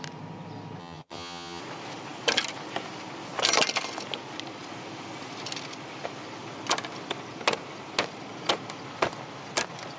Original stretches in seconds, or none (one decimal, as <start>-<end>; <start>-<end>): 0.0-0.8; 1.6-10.0